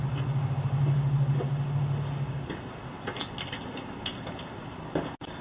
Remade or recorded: recorded